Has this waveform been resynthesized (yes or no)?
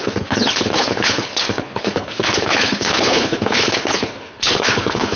yes